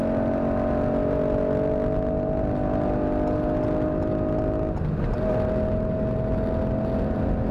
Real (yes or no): yes